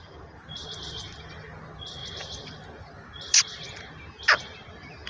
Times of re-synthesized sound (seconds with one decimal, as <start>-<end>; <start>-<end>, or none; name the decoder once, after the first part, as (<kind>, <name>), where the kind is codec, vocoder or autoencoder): 2.0-3.9 (vocoder, BigVGAN v2)